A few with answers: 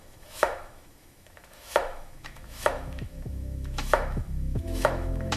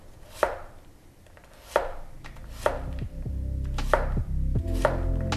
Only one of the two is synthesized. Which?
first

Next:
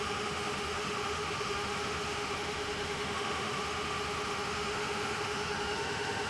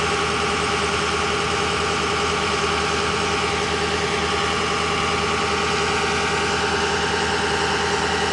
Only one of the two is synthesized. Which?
first